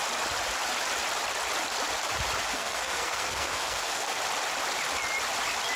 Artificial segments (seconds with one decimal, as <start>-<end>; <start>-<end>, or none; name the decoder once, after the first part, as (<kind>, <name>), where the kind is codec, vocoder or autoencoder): 2.4-4.2 (codec, SNAC)